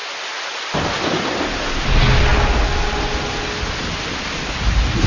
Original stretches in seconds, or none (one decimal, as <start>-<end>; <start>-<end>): 0.0-5.1